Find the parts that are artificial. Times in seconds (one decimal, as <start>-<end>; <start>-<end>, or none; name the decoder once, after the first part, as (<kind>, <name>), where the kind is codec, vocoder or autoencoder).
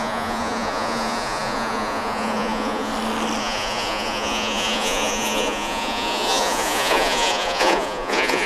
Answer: 0.0-2.9 (vocoder, Vocos); 3.4-8.5